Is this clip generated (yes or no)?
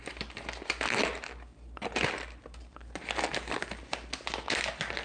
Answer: no